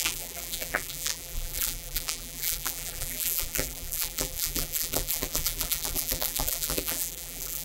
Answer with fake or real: fake